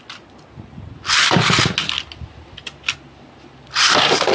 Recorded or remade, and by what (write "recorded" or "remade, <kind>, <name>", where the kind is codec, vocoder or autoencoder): recorded